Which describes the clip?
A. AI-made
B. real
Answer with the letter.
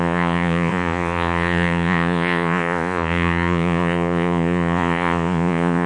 A